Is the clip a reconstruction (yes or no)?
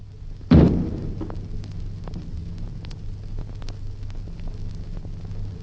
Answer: no